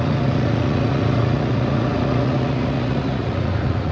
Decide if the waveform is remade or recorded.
remade